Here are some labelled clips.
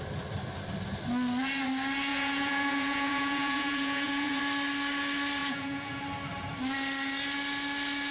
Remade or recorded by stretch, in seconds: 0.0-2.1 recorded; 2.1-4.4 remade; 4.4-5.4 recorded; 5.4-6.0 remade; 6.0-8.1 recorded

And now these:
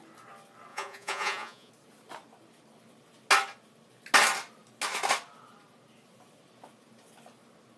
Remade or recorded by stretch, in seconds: 0.0-0.7 recorded; 0.7-1.7 remade; 1.7-7.8 recorded

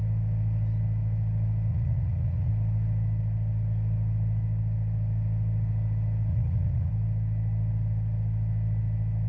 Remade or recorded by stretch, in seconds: 0.0-1.7 recorded; 1.7-2.5 remade; 2.5-6.3 recorded; 6.3-6.9 remade; 6.9-9.3 recorded

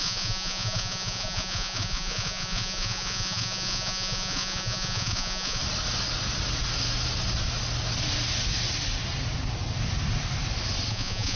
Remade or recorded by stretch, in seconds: 0.0-5.6 remade; 5.6-10.9 recorded; 10.9-11.4 remade

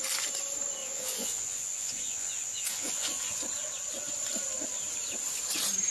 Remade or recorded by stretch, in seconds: 0.0-0.8 recorded; 0.8-3.4 remade; 3.4-5.9 recorded

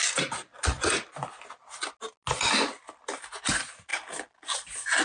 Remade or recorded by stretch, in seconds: 0.0-5.0 recorded